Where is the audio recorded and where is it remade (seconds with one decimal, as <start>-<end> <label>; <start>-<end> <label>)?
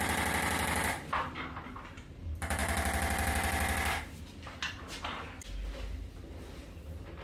0.0-7.2 recorded